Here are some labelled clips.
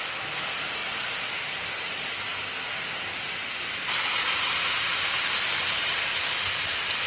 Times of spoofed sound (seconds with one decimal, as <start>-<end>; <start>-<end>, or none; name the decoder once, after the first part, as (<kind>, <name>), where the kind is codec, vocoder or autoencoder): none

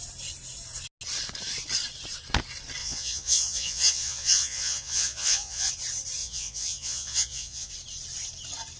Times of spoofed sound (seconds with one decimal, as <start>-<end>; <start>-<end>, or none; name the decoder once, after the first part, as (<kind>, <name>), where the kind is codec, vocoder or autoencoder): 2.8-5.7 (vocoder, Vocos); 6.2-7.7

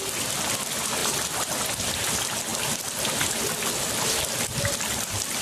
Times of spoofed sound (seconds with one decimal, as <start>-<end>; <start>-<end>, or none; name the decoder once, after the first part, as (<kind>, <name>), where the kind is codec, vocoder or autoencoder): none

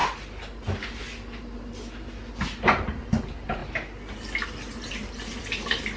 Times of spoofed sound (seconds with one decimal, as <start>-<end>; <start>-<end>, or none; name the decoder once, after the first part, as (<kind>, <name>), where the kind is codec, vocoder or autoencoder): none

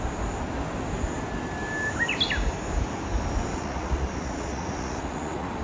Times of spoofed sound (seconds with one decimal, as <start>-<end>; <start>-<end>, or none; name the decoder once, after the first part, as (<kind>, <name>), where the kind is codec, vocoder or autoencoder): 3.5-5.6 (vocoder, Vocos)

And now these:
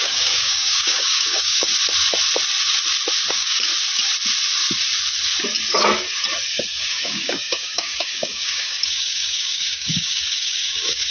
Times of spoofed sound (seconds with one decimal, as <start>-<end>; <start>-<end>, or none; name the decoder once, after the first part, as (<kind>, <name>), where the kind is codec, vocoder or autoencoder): 0.0-1.7 (codec, DAC); 3.3-3.7; 6.5-11.1

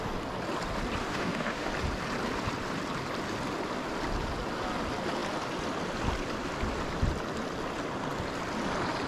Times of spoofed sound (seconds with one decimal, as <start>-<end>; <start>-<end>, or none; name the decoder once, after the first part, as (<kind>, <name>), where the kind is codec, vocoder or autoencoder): 1.0-1.7 (autoencoder, DAC-VAE)